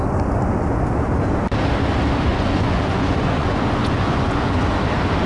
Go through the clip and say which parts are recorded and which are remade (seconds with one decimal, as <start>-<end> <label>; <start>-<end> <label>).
0.0-2.3 recorded; 2.3-4.7 remade; 4.7-5.3 recorded